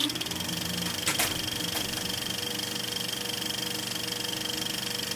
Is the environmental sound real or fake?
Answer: real